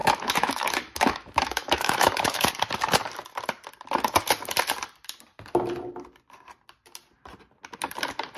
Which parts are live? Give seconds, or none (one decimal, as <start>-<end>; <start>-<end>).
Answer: 2.5-8.4